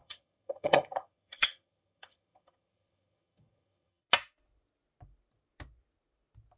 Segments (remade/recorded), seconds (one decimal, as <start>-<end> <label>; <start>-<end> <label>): 0.0-4.0 remade; 4.0-6.6 recorded